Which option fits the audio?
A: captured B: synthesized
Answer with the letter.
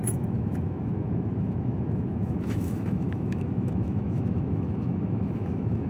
B